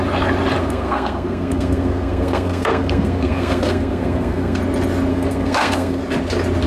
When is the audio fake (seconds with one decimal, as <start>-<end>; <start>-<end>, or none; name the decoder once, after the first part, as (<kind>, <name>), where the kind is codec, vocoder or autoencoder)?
0.6-4.6 (codec, SNAC); 5.1-6.0